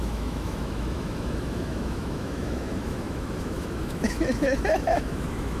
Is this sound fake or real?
fake